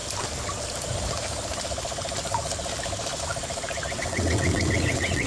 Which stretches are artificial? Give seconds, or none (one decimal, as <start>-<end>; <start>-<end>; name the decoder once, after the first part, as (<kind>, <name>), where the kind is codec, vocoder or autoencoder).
3.8-5.3 (vocoder, WaveNeXt)